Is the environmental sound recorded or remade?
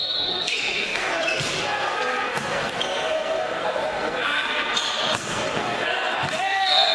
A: remade